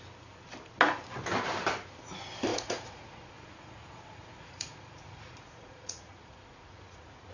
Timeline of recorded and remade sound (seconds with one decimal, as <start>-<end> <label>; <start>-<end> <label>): 0.0-2.5 recorded; 2.5-7.3 remade